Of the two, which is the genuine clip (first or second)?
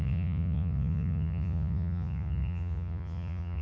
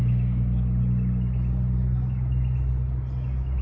second